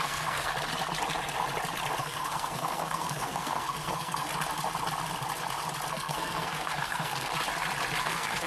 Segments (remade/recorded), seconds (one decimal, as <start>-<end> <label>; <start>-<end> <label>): 0.0-0.5 remade; 0.5-2.0 recorded; 2.0-4.3 remade; 4.3-5.9 recorded; 5.9-7.3 remade; 7.3-8.0 recorded; 8.0-8.5 remade